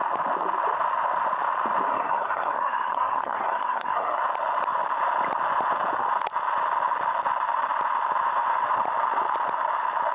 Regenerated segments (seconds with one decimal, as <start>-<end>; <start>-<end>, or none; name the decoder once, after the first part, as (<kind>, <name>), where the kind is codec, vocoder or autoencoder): 1.9-4.2 (codec, SNAC)